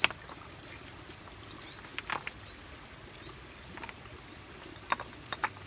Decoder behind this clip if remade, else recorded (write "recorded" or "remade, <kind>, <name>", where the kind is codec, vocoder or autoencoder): recorded